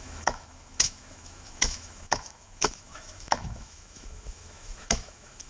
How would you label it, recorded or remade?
remade